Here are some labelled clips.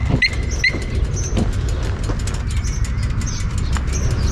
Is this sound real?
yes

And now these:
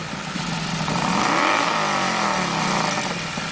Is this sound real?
yes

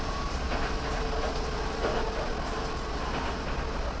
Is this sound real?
yes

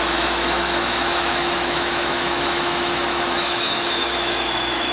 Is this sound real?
no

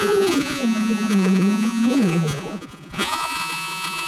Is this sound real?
no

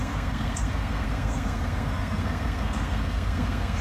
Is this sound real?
no